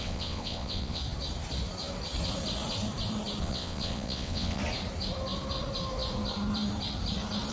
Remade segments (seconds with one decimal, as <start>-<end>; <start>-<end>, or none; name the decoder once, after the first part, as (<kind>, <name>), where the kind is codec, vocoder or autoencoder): 0.0-1.0 (vocoder, WaveNeXt); 3.4-4.6